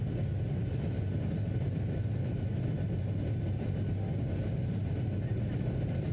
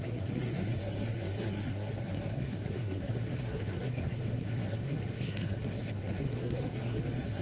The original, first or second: first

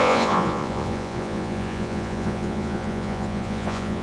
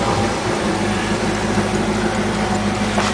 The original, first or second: second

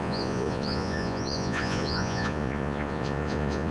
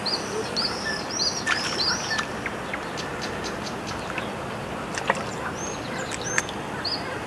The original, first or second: second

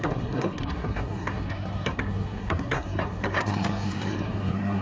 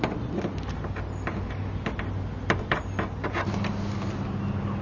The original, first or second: second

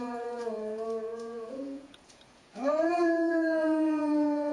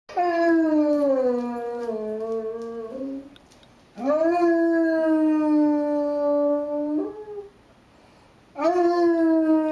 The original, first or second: second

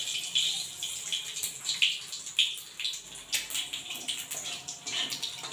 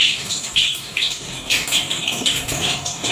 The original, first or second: first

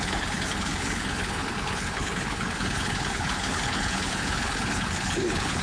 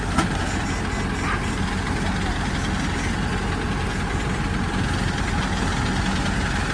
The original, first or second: second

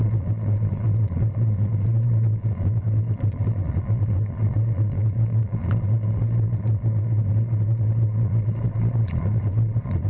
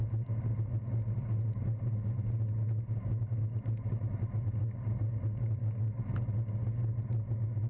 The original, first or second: second